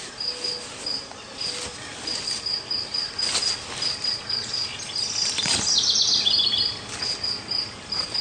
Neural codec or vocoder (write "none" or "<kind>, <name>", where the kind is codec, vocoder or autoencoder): none